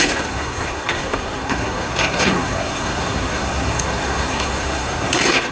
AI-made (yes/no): yes